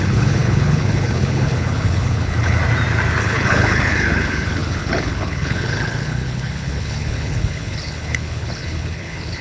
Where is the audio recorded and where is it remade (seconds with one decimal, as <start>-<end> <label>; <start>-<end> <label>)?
0.0-2.6 remade; 2.6-3.2 recorded; 3.2-9.4 remade